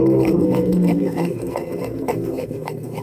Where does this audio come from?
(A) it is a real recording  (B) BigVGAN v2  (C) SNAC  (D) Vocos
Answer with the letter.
C